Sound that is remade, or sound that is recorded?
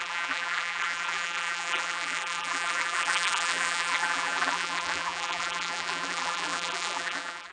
remade